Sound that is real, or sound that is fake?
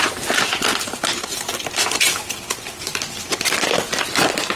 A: fake